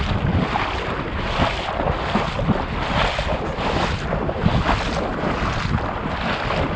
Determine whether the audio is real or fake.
real